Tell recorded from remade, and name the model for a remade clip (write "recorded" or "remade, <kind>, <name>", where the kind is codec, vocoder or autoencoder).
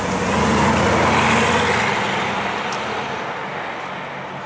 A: recorded